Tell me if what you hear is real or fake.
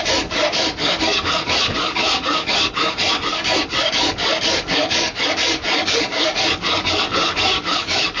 fake